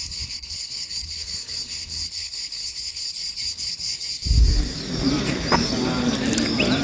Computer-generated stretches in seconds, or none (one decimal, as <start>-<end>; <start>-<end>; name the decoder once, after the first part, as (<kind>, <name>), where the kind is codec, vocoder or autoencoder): 0.0-4.1 (codec, HILCodec)